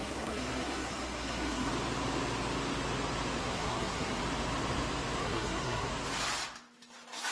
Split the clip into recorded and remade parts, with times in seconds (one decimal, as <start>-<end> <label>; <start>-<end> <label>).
0.0-1.7 remade; 1.7-3.4 recorded; 3.4-4.2 remade; 4.2-5.2 recorded; 5.2-5.9 remade; 5.9-7.3 recorded

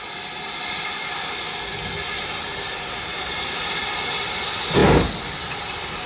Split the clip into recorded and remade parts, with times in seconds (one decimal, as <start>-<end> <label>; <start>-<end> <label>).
0.0-6.1 recorded

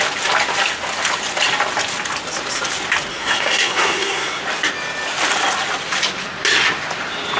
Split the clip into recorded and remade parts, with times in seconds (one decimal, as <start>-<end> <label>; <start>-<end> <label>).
0.0-3.1 recorded; 3.1-4.4 remade; 4.4-7.4 recorded

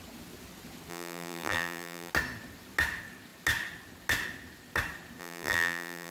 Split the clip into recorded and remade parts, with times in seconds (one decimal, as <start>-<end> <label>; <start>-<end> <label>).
0.0-0.9 recorded; 0.9-2.1 remade; 2.1-5.2 recorded; 5.2-6.1 remade

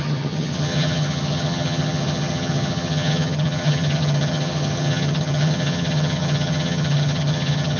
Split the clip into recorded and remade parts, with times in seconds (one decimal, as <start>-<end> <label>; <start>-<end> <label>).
0.0-7.8 remade

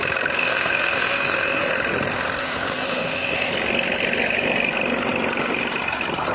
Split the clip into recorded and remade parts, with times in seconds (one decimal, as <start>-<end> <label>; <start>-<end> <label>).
0.0-0.4 recorded; 0.4-1.7 remade; 1.7-2.4 recorded; 2.4-3.5 remade; 3.5-6.3 recorded

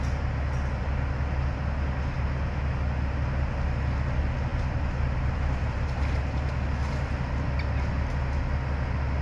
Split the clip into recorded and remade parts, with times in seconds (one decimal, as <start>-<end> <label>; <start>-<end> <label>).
0.0-4.5 recorded; 4.5-6.2 remade; 6.2-9.2 recorded